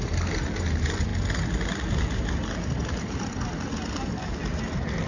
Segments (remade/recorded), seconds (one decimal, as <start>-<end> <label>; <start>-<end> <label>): 0.0-5.1 recorded